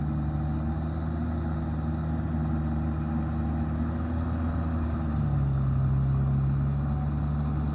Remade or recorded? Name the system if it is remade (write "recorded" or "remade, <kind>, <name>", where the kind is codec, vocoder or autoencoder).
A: recorded